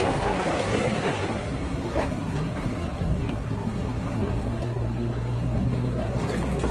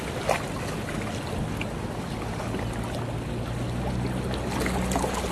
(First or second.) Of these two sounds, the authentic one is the second